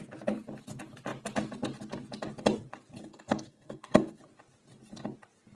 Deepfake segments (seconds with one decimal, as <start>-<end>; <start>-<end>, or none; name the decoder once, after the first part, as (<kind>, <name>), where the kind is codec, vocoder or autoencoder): 3.1-4.2 (codec, SNAC)